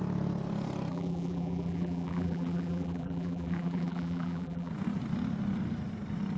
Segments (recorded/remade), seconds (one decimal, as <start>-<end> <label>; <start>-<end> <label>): 0.0-0.9 recorded; 0.9-4.7 remade; 4.7-6.4 recorded